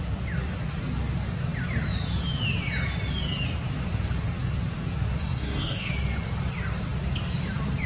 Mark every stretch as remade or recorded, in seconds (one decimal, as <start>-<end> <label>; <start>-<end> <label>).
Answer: 0.0-5.2 recorded; 5.2-5.9 remade; 5.9-7.9 recorded